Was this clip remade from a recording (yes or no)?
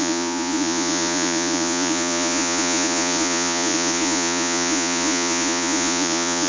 yes